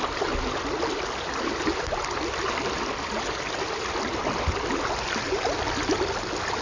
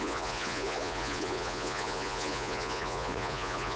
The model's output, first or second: second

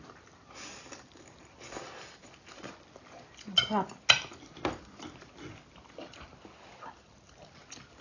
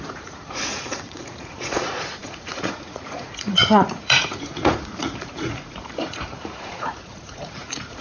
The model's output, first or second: second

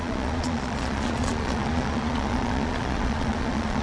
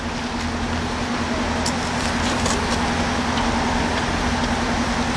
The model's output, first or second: first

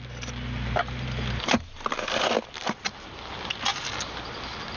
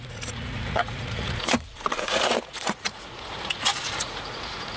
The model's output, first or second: second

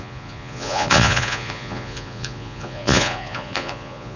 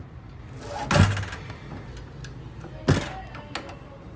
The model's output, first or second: first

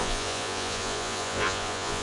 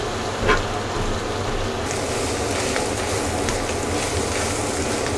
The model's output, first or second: first